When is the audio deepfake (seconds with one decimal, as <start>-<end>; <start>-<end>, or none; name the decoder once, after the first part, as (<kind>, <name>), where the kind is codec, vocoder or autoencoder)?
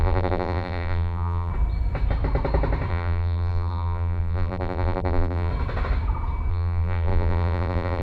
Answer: 0.0-1.5 (vocoder, BigVGAN v2); 2.9-5.5; 6.5-8.0